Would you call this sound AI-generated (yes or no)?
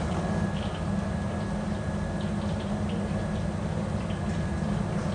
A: no